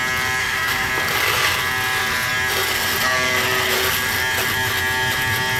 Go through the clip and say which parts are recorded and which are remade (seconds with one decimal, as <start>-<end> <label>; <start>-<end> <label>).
0.0-0.4 recorded; 0.4-0.9 remade; 0.9-5.6 recorded